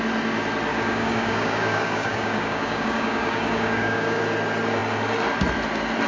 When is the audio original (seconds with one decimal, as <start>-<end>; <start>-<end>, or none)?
0.0-0.7; 4.2-6.1